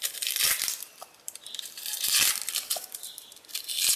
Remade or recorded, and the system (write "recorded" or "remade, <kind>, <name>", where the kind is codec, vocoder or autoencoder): remade, vocoder, BigVGAN v2